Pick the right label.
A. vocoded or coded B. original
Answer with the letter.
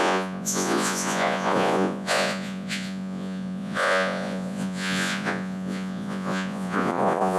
A